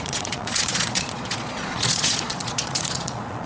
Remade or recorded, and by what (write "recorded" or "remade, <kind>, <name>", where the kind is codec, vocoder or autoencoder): remade, vocoder, Vocos